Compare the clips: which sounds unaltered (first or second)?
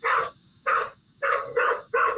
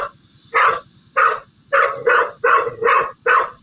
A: second